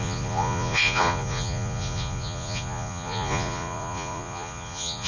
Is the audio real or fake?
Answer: fake